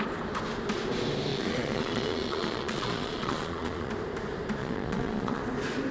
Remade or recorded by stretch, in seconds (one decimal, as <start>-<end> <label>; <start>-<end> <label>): 0.0-1.3 recorded; 1.3-3.9 remade; 3.9-4.6 recorded; 4.6-5.4 remade; 5.4-5.9 recorded